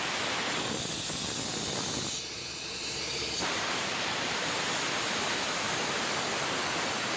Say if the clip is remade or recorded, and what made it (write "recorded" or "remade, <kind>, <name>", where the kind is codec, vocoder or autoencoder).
recorded